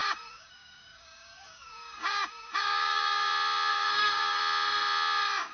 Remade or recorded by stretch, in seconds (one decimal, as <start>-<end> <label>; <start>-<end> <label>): 0.0-3.3 remade; 3.3-3.7 recorded; 3.7-4.4 remade; 4.4-5.5 recorded